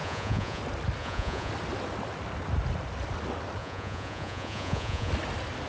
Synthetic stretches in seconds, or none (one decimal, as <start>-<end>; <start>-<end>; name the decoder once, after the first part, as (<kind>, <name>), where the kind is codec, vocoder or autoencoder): 0.0-0.6 (vocoder, Vocos); 1.0-1.5; 3.6-5.1